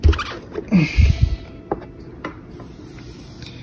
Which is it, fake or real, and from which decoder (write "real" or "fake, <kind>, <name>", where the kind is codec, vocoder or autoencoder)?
real